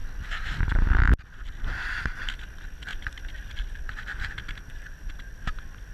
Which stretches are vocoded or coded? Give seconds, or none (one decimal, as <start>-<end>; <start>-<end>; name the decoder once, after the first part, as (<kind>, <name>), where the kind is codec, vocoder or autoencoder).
2.9-3.6 (vocoder, BigVGAN v2); 4.1-5.3